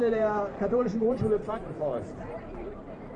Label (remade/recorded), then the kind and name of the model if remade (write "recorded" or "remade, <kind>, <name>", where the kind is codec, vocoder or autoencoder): remade, vocoder, BigVGAN v2